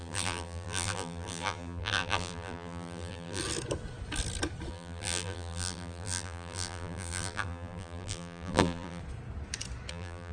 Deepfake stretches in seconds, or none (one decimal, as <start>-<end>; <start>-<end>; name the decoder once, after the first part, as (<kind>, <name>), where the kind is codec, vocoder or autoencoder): 0.0-3.4 (vocoder, BigVGAN v2); 4.7-9.0; 9.9-10.3